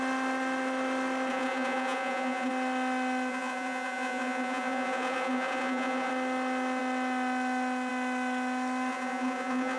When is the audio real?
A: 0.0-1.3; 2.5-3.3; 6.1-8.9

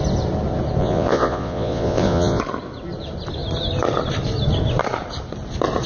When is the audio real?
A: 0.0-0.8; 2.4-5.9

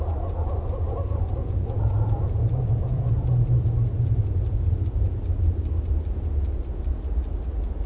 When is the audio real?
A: 0.0-1.4; 3.1-7.9

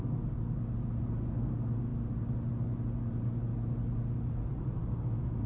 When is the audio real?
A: 0.0-5.5